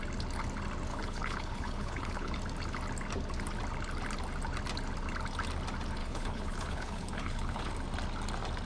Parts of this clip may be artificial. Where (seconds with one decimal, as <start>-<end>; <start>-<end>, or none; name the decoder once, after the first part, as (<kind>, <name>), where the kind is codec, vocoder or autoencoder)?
0.9-2.3 (codec, HILCodec); 6.0-7.7